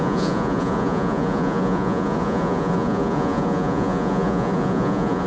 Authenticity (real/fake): fake